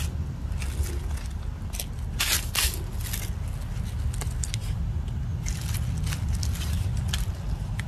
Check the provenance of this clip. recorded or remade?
recorded